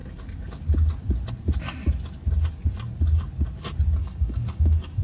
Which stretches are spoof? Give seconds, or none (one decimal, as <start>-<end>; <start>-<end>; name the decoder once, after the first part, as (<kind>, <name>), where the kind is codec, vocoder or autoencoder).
4.0-5.0 (codec, DAC)